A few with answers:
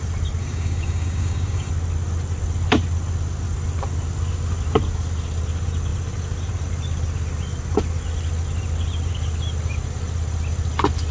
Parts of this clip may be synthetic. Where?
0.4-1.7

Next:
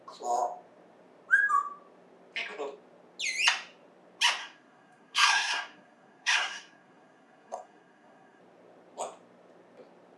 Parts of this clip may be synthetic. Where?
4.4-8.4

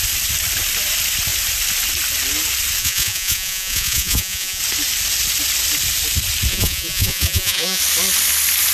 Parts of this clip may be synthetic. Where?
2.8-4.6; 6.5-7.8

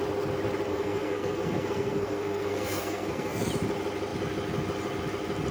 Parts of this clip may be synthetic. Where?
0.7-3.5

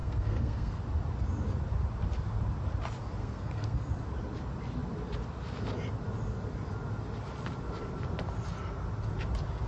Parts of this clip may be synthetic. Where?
0.0-0.8; 3.2-3.9

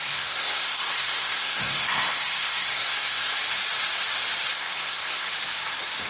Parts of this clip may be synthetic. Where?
0.0-3.4; 4.5-5.3